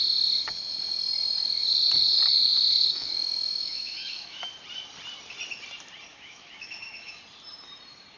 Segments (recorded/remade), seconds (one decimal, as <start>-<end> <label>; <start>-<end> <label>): 0.0-2.5 recorded; 2.5-4.5 remade; 4.5-6.1 recorded; 6.1-7.2 remade; 7.2-8.2 recorded